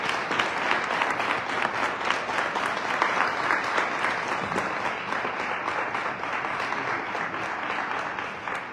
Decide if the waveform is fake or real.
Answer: real